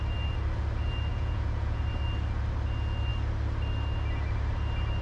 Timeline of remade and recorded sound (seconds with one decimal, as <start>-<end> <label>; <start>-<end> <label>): 0.0-1.1 recorded; 1.1-1.8 remade; 1.8-5.0 recorded